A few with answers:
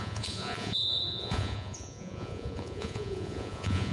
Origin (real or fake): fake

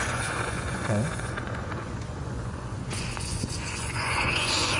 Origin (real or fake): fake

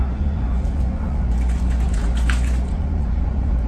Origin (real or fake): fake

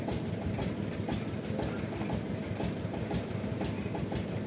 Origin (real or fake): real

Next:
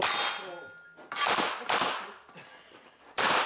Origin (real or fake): real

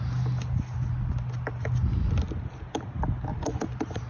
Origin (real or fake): real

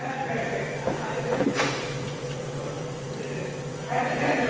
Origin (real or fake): fake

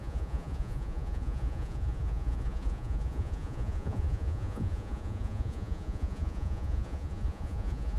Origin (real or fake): fake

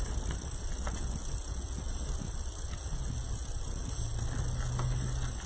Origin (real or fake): real